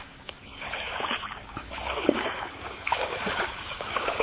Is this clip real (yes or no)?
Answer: no